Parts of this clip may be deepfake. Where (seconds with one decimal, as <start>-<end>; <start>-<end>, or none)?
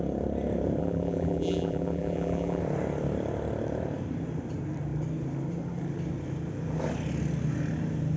0.8-2.6